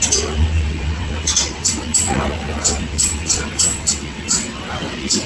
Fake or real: fake